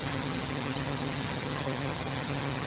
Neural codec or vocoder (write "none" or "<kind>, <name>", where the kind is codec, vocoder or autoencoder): vocoder, HiFi-GAN